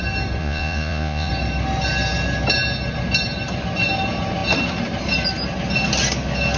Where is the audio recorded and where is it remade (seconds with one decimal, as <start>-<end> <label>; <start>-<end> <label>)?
0.0-0.4 recorded; 0.4-1.3 remade; 1.3-6.6 recorded